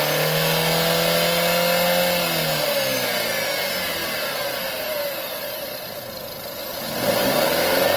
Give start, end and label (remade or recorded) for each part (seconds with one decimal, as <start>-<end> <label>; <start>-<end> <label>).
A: 0.0-4.0 recorded; 4.0-5.8 remade; 5.8-8.0 recorded